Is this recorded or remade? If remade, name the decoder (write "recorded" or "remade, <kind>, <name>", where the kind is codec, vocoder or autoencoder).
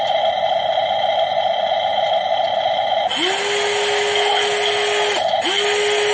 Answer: recorded